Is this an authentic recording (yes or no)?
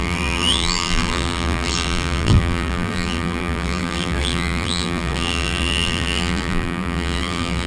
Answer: no